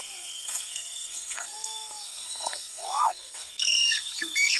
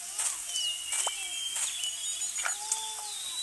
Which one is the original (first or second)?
second